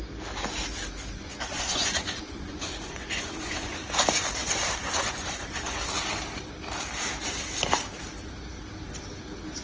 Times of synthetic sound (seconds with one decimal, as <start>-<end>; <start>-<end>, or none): 1.1-3.8; 4.4-5.8